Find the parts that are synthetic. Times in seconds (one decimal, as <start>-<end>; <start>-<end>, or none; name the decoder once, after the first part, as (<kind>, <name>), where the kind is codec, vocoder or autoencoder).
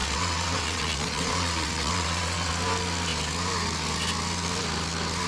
0.0-2.5 (vocoder, WaveNeXt)